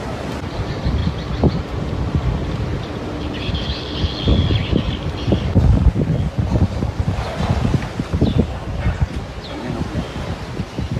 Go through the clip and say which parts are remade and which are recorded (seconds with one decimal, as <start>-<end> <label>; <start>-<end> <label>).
0.0-11.0 remade